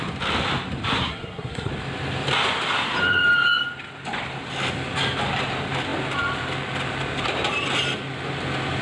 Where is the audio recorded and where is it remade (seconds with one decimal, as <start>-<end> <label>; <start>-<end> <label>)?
0.0-1.0 recorded; 1.0-1.7 remade; 1.7-8.8 recorded